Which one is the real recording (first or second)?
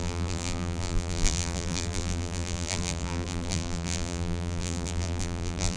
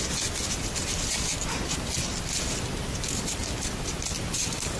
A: second